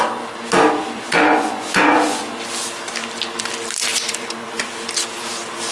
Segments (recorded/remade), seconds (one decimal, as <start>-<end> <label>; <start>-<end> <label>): 0.0-0.8 recorded; 0.8-2.2 remade; 2.2-3.9 recorded; 3.9-4.7 remade; 4.7-5.7 recorded